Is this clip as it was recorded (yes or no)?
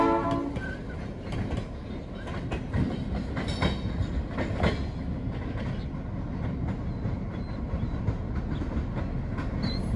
yes